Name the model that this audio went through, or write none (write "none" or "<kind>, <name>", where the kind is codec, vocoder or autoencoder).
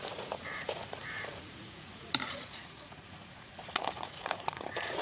vocoder, Vocos